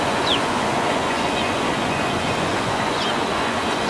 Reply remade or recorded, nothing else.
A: remade